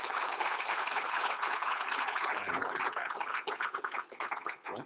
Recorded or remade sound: remade